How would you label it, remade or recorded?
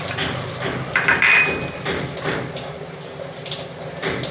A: remade